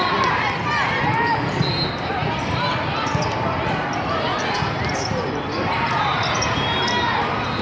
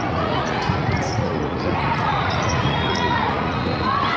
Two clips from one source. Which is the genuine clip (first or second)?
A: first